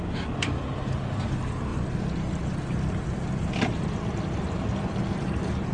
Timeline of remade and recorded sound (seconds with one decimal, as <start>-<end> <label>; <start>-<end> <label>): 0.0-5.7 recorded